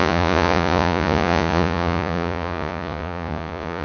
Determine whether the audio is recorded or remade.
remade